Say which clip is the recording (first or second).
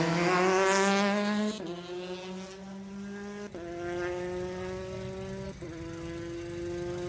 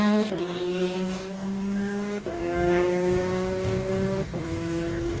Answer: first